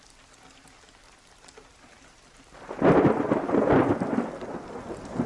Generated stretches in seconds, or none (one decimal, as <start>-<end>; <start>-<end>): 1.7-3.8